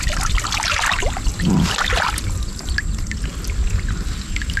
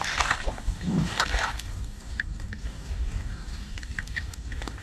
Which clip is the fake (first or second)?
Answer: second